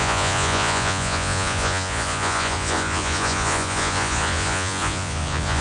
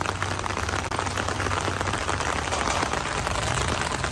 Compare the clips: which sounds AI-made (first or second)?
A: first